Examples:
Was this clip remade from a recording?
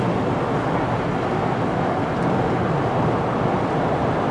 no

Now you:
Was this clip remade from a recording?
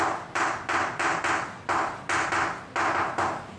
no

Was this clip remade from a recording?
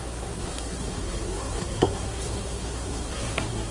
yes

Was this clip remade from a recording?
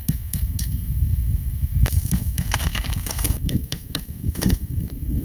yes